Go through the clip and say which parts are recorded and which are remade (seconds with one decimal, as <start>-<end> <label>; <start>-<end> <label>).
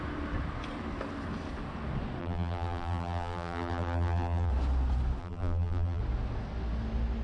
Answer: 0.0-2.2 recorded; 2.2-4.5 remade; 4.5-5.2 recorded; 5.2-6.0 remade; 6.0-7.2 recorded